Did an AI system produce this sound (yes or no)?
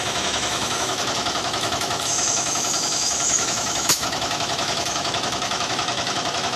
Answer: yes